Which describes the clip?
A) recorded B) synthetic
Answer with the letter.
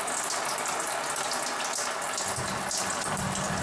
A